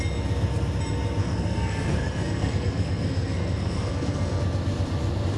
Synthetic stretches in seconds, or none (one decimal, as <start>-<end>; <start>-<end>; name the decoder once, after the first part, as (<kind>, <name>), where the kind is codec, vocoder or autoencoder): 1.2-4.4 (codec, SNAC)